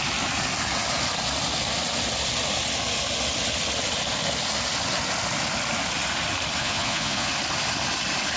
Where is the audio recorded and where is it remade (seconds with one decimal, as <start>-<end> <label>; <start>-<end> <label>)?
0.0-6.6 recorded; 6.6-7.3 remade; 7.3-8.4 recorded